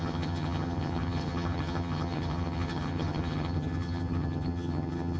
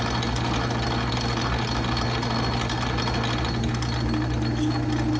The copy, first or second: first